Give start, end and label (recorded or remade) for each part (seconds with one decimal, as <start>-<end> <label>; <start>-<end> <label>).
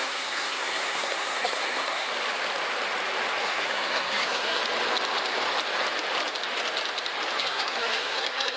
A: 0.0-2.1 remade; 2.1-3.4 recorded; 3.4-4.6 remade; 4.6-7.4 recorded; 7.4-8.6 remade